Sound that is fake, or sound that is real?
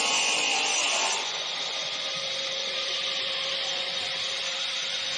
fake